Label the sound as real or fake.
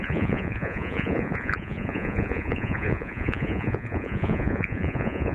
fake